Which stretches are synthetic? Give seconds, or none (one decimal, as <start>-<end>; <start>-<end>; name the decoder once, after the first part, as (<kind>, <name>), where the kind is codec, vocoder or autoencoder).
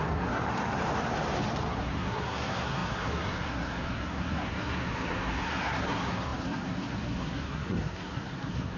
0.0-0.4 (codec, SNAC); 1.7-8.8